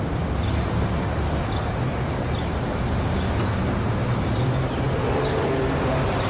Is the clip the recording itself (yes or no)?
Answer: yes